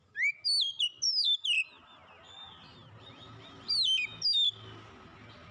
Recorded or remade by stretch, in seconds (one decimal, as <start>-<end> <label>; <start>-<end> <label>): 0.0-5.5 recorded